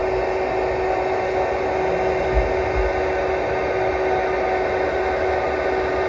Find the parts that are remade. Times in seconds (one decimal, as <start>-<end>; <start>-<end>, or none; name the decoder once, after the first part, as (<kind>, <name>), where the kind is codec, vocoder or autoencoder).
none